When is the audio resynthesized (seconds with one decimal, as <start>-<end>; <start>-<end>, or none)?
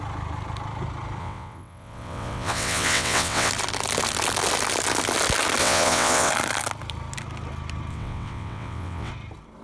1.2-3.5; 5.6-6.3; 7.9-9.1